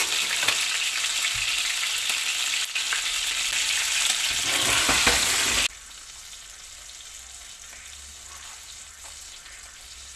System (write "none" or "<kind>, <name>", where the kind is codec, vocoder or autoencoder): none